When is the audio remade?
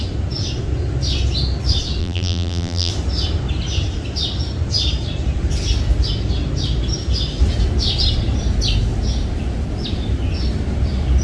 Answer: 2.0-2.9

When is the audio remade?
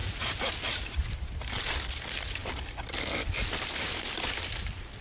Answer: 0.0-0.5; 1.0-1.7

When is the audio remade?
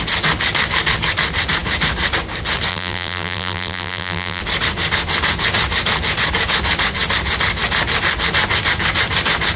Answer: 2.7-4.4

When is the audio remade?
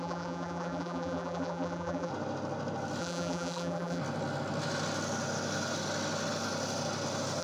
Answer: 0.0-2.1; 3.0-4.0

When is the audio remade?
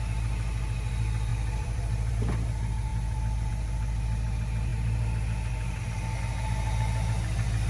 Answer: 1.3-2.1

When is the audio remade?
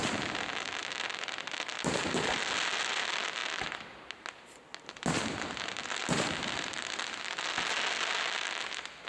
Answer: none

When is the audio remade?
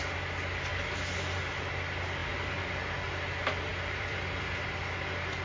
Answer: 3.7-4.8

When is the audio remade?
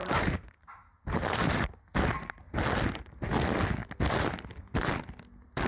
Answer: 0.0-1.7